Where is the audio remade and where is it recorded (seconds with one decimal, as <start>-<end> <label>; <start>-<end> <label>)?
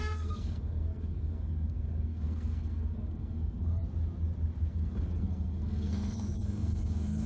0.0-3.8 remade; 3.8-4.6 recorded; 4.6-7.3 remade